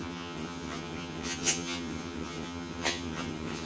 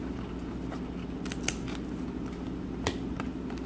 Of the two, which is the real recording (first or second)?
second